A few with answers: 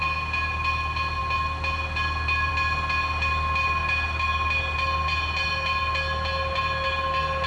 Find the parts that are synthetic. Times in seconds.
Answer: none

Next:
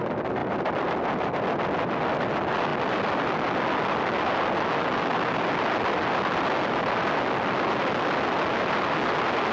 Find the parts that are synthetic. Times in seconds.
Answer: none

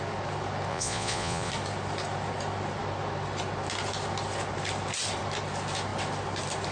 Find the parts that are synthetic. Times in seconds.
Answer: 0.7-1.5 (vocoder, Vocos)

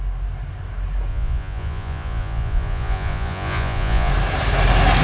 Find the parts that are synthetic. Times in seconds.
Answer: 1.1-4.1 (vocoder, Vocos)

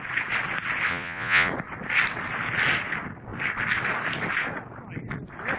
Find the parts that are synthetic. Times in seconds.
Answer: 0.9-1.5 (vocoder, Vocos)

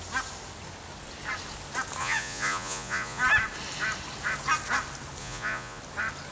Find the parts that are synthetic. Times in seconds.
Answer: 2.0-3.2 (vocoder, Vocos); 5.2-5.8